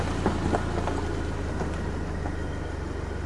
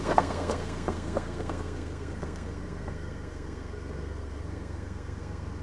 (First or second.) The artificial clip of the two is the second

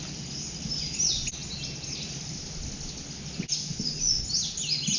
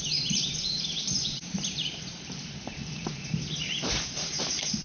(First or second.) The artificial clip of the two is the second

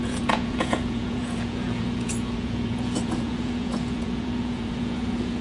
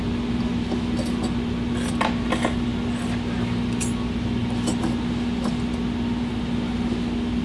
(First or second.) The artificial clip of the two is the first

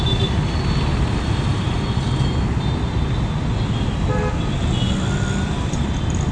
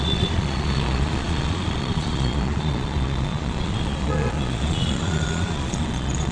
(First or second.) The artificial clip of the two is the second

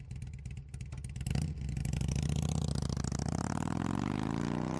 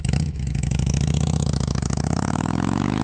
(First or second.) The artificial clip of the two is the second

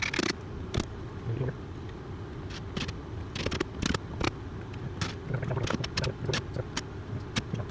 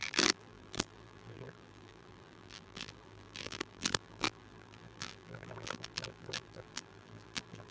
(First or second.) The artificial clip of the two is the second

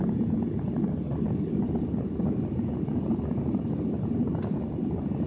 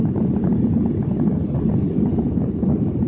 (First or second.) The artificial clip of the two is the second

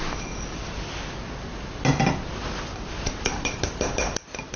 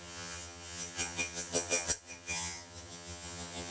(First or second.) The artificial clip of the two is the second